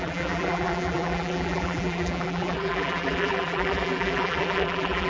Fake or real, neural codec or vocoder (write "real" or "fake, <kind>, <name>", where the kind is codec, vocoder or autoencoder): fake, vocoder, BigVGAN v2